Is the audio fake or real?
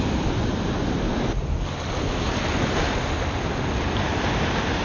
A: real